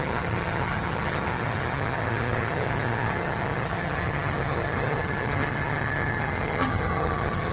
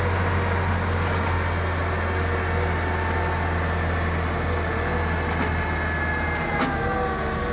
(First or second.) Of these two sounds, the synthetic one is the first